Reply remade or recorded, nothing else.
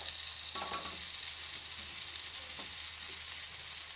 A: recorded